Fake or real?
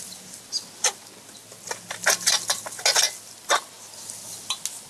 real